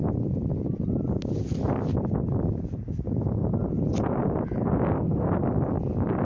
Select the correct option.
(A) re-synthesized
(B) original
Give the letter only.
B